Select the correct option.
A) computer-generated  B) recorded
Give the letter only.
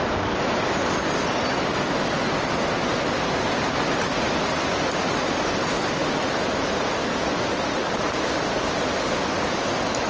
B